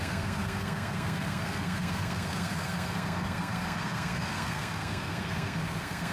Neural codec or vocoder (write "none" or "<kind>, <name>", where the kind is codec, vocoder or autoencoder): codec, SNAC